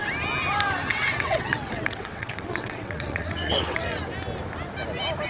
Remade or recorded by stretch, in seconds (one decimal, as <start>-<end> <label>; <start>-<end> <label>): 0.0-0.9 recorded; 0.9-4.0 remade; 4.0-5.3 recorded